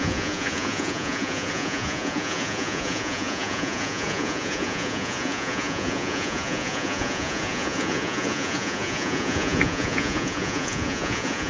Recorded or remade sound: remade